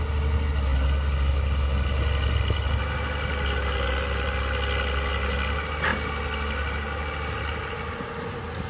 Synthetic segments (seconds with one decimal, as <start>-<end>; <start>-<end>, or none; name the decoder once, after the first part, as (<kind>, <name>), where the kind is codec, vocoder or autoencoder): none